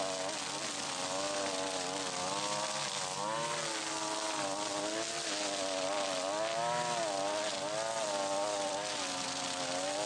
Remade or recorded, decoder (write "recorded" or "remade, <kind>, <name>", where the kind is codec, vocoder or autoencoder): recorded